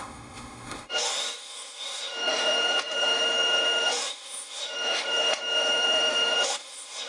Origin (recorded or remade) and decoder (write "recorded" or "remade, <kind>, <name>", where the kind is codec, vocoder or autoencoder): remade, autoencoder, DAC-VAE